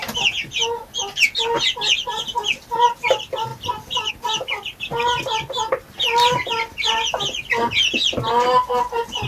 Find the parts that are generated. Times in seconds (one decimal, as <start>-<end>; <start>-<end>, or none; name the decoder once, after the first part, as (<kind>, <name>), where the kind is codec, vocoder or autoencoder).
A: 3.5-4.1 (vocoder, BigVGAN v2)